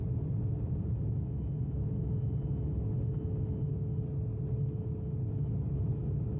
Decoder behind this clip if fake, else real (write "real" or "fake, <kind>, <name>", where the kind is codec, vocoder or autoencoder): real